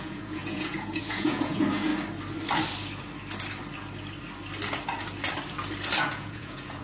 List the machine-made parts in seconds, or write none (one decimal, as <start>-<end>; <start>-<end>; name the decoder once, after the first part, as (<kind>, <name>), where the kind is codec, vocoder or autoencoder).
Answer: 0.0-1.9 (vocoder, Vocos); 6.0-6.8